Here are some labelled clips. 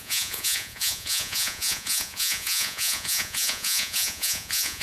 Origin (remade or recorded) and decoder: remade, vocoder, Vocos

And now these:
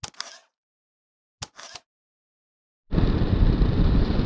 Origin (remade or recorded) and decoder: recorded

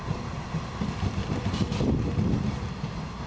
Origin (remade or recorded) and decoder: recorded